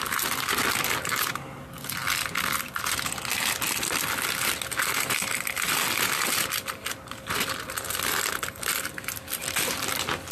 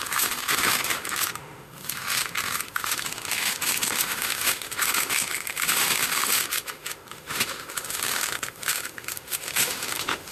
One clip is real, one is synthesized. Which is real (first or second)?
first